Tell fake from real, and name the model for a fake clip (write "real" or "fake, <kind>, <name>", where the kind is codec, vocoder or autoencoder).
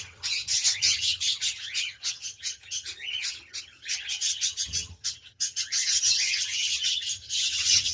fake, vocoder, HiFi-GAN